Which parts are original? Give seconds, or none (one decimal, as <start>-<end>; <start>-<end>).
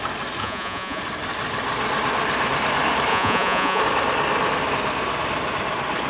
0.0-0.4; 1.0-3.1; 3.8-6.1